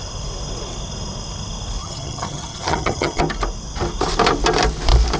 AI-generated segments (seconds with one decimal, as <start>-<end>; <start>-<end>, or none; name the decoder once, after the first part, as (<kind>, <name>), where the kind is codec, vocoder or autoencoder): 1.8-3.2 (vocoder, HiFi-GAN)

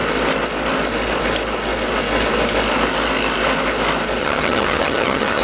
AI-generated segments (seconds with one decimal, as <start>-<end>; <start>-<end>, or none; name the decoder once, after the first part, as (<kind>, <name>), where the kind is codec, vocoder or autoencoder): 4.2-5.4 (vocoder, HiFi-GAN)

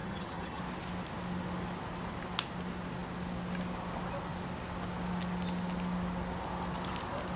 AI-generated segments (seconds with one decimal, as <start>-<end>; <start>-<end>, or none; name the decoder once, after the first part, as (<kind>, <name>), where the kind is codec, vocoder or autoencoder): 0.0-0.6 (vocoder, HiFi-GAN)

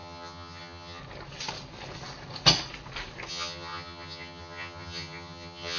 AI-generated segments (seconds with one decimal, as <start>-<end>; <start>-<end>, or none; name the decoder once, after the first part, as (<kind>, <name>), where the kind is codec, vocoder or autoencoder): 0.0-1.0 (vocoder, HiFi-GAN); 3.3-5.8